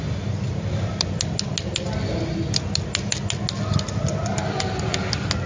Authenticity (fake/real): real